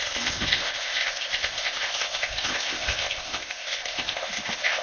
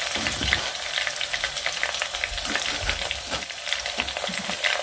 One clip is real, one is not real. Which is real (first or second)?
second